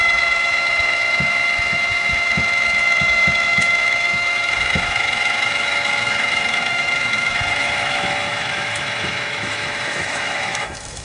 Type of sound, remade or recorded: remade